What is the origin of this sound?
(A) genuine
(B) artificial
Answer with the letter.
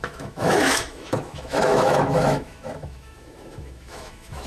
B